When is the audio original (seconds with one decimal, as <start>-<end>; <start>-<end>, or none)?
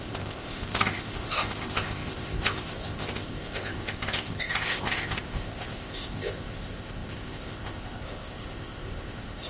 none